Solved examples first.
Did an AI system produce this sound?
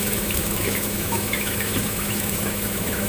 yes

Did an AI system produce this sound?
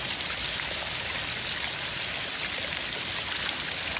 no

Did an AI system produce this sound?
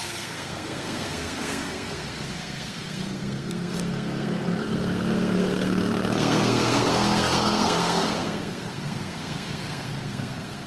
yes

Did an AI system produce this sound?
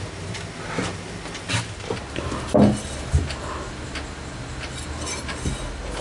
no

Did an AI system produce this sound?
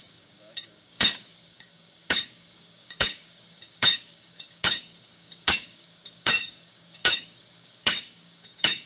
yes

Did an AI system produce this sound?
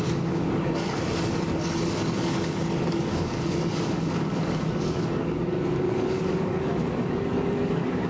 yes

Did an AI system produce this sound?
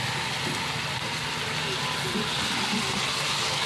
no